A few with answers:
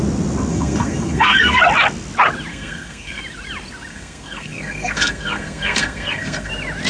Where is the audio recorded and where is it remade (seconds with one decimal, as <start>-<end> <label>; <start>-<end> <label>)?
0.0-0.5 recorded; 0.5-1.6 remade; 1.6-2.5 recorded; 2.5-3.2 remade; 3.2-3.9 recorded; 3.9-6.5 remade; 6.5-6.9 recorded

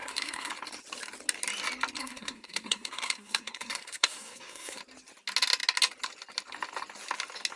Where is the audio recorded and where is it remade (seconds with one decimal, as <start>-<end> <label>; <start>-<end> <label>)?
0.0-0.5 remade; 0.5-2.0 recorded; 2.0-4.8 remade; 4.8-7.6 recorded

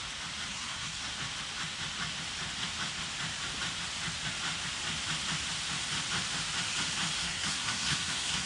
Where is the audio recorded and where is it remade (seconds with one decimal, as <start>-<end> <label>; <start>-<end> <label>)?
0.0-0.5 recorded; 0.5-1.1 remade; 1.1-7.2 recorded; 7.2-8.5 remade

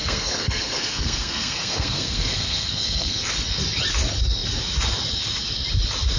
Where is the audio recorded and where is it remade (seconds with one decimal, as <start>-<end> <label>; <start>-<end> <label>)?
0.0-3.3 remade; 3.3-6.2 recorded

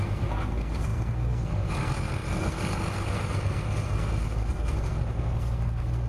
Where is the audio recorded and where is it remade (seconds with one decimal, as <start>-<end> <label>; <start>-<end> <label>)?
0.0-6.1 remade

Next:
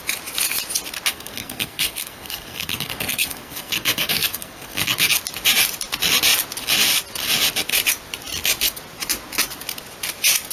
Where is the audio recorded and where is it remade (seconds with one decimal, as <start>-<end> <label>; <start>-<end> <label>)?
0.0-1.1 recorded; 1.1-5.1 remade; 5.1-10.5 recorded

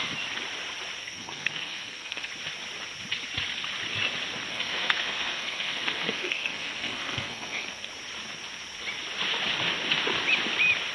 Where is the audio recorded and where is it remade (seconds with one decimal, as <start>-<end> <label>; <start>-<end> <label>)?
0.0-1.0 recorded; 1.0-2.3 remade; 2.3-4.5 recorded; 4.5-7.9 remade; 7.9-10.9 recorded